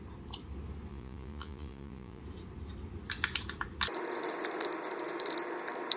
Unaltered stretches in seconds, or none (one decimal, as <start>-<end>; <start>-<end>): 0.0-0.9; 2.2-6.0